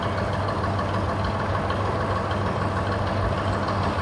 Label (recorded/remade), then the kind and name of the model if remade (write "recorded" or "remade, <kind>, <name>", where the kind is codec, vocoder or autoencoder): recorded